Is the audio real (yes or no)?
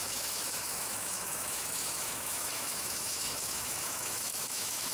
no